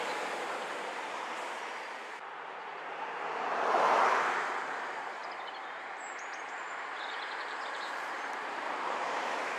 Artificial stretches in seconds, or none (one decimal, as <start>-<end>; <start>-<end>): 0.0-9.6